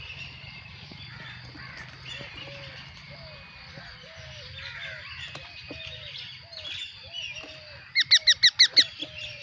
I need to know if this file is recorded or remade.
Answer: recorded